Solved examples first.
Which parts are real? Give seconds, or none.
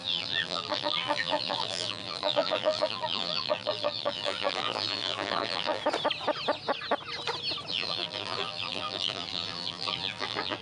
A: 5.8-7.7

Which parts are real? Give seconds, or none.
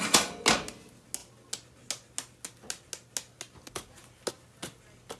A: 0.0-5.2